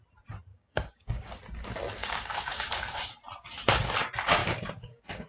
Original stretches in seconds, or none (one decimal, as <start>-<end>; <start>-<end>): 0.0-0.5; 1.4-2.0; 2.7-4.4